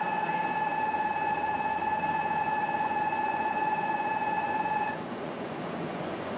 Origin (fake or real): fake